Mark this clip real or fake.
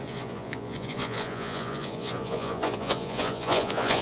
fake